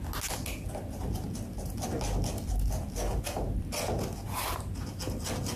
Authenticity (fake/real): real